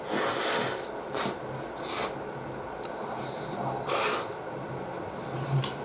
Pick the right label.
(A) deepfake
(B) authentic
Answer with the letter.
B